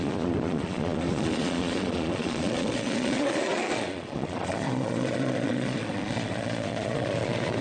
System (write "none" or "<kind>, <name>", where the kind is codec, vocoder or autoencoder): vocoder, Vocos